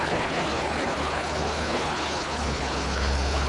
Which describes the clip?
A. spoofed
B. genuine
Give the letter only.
A